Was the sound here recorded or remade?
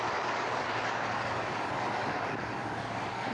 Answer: remade